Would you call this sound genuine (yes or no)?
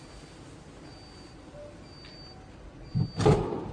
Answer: yes